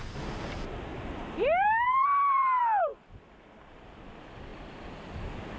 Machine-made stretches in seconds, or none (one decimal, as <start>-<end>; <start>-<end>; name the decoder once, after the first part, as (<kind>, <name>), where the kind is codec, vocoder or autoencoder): 0.9-4.0 (vocoder, BigVGAN v2)